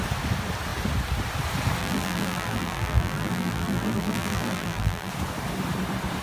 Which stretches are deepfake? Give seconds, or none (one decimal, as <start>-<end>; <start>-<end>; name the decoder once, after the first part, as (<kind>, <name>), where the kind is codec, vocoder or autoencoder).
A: 1.8-5.1 (vocoder, BigVGAN v2)